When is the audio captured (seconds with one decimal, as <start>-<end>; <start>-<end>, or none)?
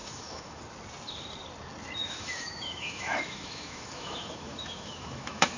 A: 0.6-2.0